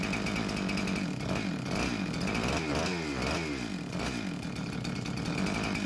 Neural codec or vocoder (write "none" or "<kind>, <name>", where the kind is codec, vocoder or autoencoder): none